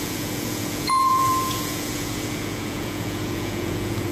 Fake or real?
fake